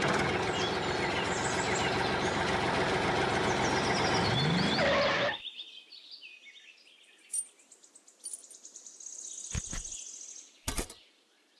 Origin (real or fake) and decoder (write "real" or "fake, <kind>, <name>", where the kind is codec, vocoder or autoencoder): real